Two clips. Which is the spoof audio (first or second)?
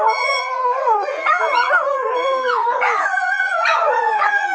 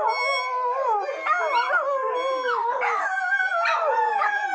first